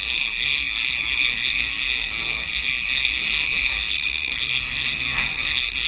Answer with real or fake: fake